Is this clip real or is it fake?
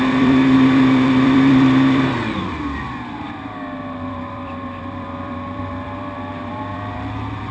fake